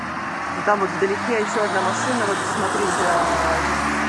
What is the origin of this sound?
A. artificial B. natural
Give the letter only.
B